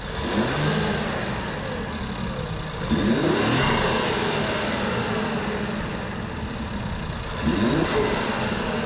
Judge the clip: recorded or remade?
recorded